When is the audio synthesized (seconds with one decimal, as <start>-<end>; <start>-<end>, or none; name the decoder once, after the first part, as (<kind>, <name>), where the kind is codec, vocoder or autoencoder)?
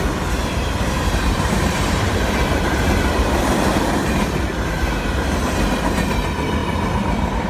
0.4-4.5 (vocoder, BigVGAN v2)